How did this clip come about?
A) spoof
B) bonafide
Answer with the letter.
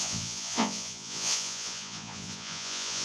A